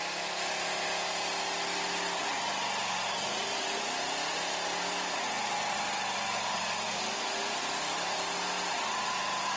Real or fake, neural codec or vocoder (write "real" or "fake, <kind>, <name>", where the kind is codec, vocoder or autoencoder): real